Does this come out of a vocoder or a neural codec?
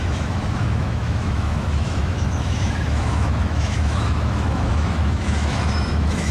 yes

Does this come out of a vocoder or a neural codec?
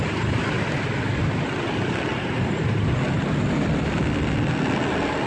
no